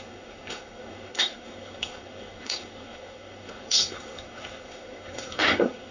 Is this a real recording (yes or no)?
no